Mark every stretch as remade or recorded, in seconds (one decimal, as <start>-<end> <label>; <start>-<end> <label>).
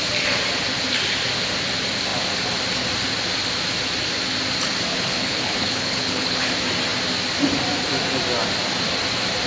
0.0-4.9 recorded; 4.9-6.5 remade; 6.5-9.5 recorded